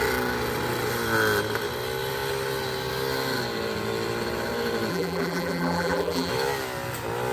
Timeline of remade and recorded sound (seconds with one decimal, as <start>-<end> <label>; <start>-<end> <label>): 0.0-4.9 recorded; 4.9-6.3 remade; 6.3-7.3 recorded